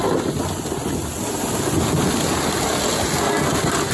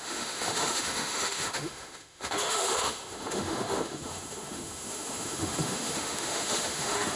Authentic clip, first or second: first